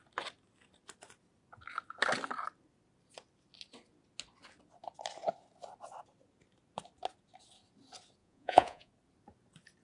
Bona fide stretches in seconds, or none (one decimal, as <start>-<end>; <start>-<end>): 0.0-8.2; 8.9-9.8